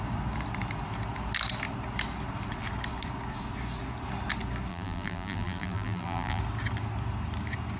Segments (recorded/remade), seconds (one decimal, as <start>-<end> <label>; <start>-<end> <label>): 0.0-4.7 recorded; 4.7-6.4 remade; 6.4-7.8 recorded